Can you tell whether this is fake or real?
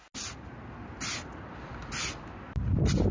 real